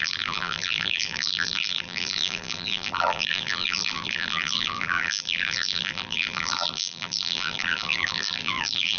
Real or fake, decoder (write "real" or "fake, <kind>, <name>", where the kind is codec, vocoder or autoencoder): fake, vocoder, BigVGAN v2